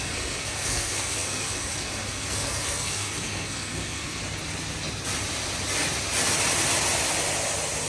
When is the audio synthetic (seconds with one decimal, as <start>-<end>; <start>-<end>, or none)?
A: 0.0-4.2